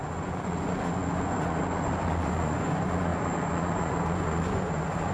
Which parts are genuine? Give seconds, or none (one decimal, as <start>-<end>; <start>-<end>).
none